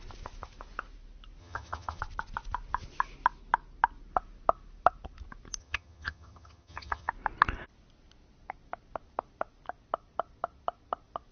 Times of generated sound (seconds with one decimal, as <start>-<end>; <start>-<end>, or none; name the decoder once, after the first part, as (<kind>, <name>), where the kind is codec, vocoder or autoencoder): 1.4-2.0 (vocoder, HiFi-GAN); 5.6-7.1